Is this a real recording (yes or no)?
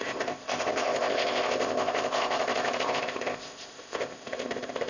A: no